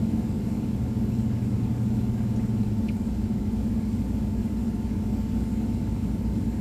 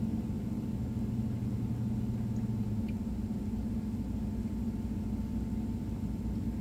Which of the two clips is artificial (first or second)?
first